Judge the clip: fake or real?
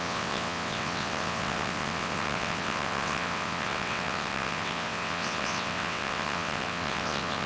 fake